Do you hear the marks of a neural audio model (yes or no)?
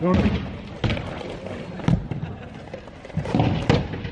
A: no